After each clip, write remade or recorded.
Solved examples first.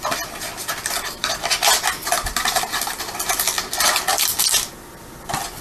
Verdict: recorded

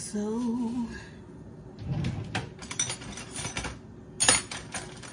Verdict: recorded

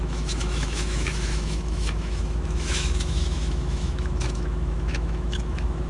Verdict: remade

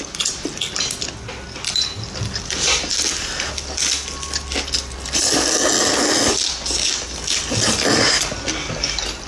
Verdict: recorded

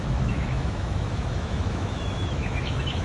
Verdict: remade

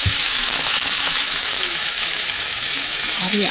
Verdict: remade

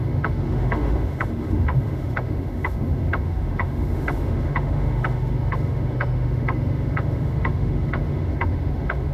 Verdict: remade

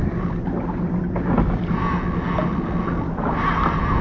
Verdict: recorded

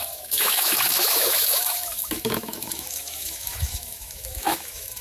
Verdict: remade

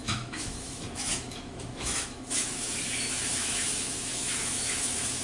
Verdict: remade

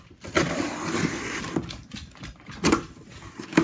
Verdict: recorded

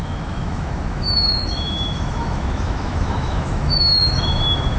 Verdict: remade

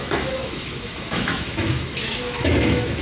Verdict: remade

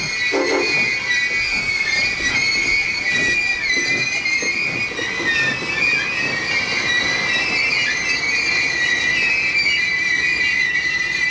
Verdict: recorded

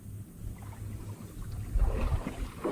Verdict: recorded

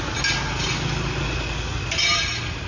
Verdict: recorded